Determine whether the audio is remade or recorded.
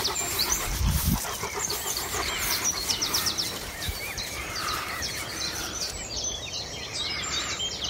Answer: remade